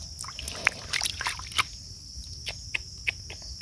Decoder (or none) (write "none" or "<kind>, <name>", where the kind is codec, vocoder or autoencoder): none